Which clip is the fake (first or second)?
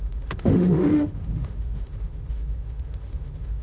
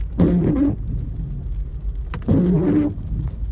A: first